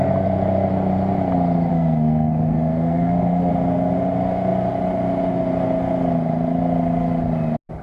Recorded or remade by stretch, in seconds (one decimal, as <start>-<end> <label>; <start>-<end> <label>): 0.0-1.7 recorded; 1.7-3.5 remade; 3.5-7.8 recorded